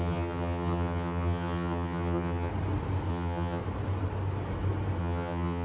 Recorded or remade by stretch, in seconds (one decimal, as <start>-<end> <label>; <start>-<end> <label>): 0.0-2.5 remade; 2.5-3.1 recorded; 3.1-3.6 remade; 3.6-5.0 recorded; 5.0-5.6 remade